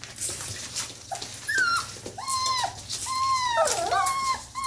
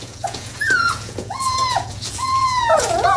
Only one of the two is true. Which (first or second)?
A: first